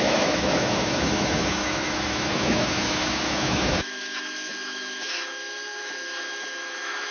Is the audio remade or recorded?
remade